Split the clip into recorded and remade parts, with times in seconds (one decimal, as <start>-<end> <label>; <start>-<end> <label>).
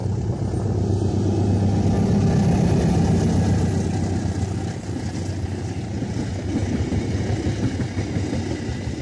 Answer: 0.0-9.0 recorded